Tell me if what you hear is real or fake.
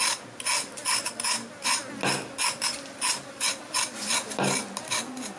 real